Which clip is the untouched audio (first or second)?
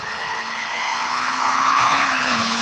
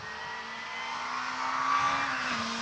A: second